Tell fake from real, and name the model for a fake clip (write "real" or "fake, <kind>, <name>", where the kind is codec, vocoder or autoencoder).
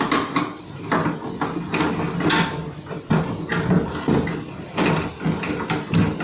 real